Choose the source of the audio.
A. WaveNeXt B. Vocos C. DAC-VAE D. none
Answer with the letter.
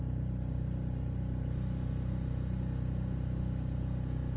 D